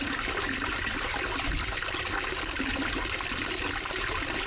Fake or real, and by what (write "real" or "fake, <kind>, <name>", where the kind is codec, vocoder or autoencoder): real